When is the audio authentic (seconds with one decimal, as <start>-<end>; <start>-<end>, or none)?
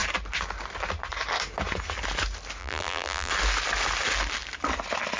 0.0-2.6; 3.3-5.2